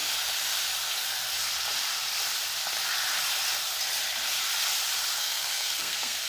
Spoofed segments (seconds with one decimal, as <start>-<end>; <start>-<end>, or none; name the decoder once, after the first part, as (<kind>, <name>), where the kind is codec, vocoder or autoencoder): 5.2-6.3 (codec, SNAC)